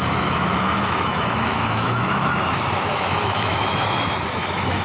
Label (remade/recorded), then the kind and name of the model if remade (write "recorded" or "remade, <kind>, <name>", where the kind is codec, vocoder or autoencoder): remade, autoencoder, DAC-VAE